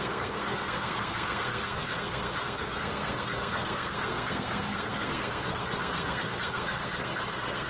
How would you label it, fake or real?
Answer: fake